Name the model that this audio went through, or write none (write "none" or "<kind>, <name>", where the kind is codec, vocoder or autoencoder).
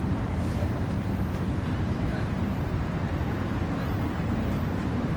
vocoder, BigVGAN v2